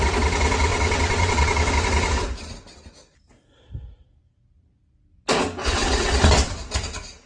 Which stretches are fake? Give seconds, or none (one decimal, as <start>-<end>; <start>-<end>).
0.7-1.7; 5.6-6.5